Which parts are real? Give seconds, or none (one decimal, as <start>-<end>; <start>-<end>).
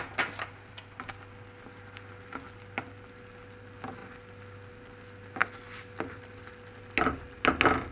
0.0-7.9